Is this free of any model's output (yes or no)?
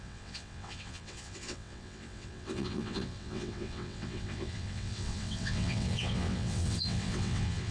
no